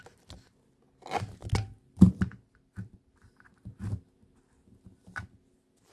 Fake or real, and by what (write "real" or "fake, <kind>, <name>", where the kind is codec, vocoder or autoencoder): real